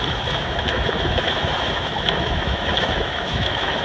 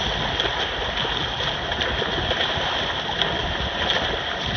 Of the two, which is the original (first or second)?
second